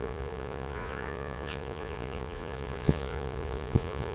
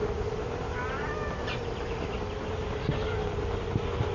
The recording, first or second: second